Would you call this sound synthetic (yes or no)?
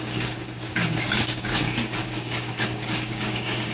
yes